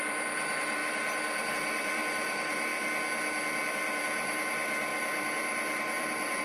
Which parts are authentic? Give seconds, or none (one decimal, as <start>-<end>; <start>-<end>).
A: 0.8-1.5; 2.7-3.7

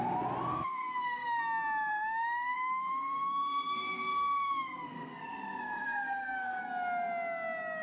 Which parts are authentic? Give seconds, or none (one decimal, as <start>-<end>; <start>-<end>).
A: 0.0-0.5; 1.4-1.9; 6.6-7.8

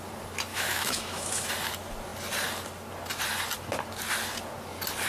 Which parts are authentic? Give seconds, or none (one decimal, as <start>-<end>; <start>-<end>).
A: 0.0-0.5; 1.5-5.1

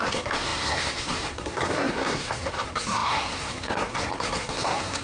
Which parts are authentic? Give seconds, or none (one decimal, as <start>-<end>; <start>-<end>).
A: none